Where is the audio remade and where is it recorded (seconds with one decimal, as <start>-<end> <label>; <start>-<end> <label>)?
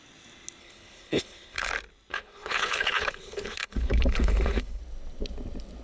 0.0-0.6 recorded; 0.6-1.7 remade; 1.7-2.1 recorded; 2.1-4.8 remade; 4.8-5.8 recorded